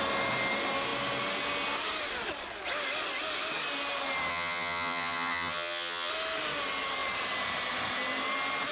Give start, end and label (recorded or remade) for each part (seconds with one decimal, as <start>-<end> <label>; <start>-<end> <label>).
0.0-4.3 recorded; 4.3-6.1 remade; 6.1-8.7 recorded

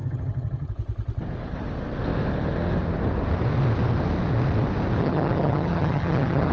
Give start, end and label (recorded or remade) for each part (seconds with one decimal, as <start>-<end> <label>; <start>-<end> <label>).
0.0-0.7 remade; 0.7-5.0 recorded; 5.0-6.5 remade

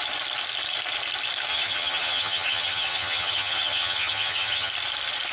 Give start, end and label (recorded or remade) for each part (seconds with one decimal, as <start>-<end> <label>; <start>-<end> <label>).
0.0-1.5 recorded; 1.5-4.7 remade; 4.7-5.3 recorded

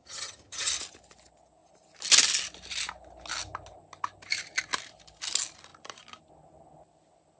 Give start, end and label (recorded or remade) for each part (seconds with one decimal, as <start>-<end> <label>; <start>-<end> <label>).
0.0-0.7 remade; 0.7-7.4 recorded

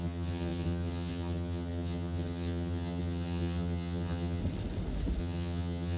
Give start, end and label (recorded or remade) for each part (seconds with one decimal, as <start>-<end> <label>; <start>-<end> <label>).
0.0-4.4 remade; 4.4-5.2 recorded; 5.2-6.0 remade

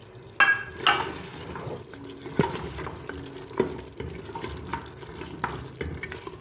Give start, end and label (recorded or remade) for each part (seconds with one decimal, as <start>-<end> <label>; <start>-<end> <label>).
0.0-6.4 recorded

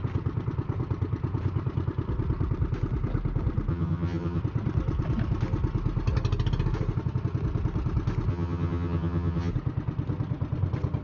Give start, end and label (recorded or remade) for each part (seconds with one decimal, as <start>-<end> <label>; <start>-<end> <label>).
0.0-3.7 recorded; 3.7-4.4 remade; 4.4-8.3 recorded; 8.3-9.5 remade; 9.5-11.0 recorded